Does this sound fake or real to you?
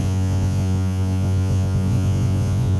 fake